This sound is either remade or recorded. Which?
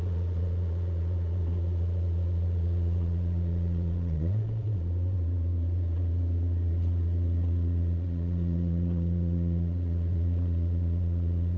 remade